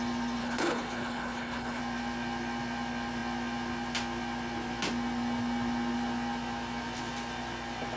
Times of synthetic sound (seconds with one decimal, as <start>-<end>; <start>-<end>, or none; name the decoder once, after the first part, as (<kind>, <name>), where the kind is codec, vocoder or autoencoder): 0.4-1.8 (codec, HILCodec)